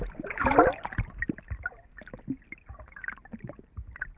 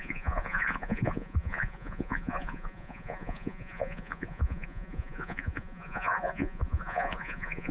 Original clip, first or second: first